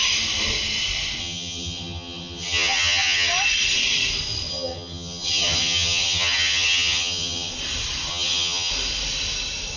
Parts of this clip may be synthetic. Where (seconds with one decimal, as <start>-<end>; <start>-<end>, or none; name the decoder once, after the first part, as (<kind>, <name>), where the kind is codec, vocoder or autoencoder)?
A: 1.2-3.3 (vocoder, HiFi-GAN); 4.5-7.5; 8.1-8.7